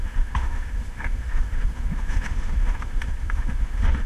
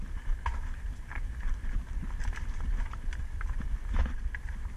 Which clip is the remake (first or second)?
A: first